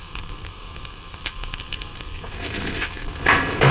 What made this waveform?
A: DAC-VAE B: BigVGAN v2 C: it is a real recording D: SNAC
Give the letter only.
D